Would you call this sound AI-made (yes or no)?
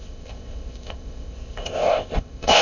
yes